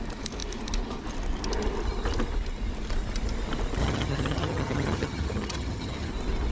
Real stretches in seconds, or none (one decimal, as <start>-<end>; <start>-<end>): 0.0-3.8; 6.1-6.5